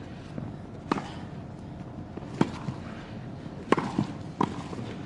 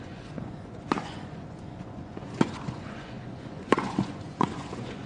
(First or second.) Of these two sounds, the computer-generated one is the second